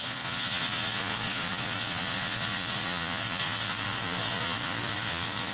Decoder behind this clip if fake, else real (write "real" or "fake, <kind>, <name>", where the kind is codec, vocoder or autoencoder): fake, vocoder, Vocos